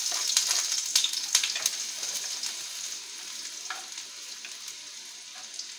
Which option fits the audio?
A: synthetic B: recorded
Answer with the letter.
B